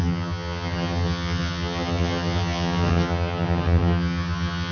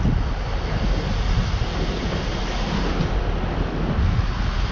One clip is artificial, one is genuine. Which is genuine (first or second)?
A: second